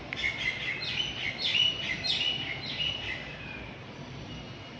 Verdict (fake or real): real